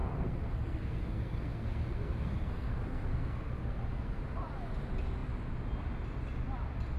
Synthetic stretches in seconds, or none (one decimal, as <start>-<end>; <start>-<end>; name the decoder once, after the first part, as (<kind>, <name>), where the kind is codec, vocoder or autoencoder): 0.0-4.2 (codec, SNAC)